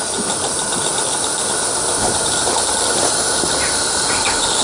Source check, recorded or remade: recorded